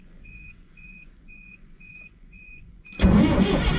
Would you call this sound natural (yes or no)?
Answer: no